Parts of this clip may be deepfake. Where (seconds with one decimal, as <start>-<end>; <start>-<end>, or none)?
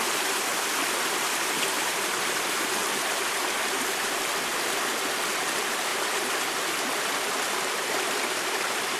0.0-0.5; 1.5-2.8; 5.4-5.9; 8.1-9.0